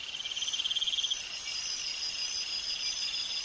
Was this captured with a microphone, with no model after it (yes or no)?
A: yes